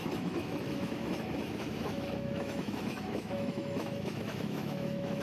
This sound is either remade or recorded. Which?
remade